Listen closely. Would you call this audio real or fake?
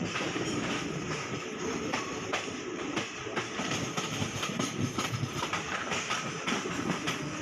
fake